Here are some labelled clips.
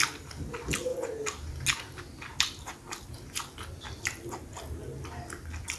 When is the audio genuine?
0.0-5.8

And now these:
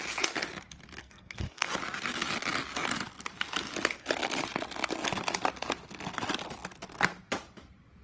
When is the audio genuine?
0.0-1.0; 1.7-8.0

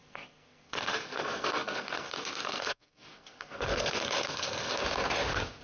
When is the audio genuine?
4.7-5.6

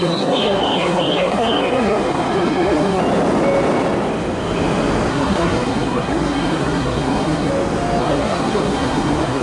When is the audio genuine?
3.0-5.1; 7.5-8.0

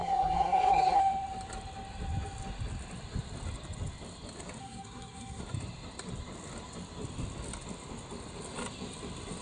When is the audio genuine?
1.0-4.6; 5.4-9.4

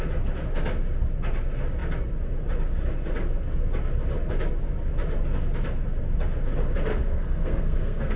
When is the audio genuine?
0.0-6.9